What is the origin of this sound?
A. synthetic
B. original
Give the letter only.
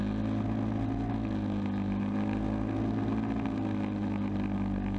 B